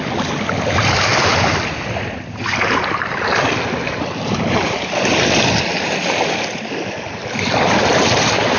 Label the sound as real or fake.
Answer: real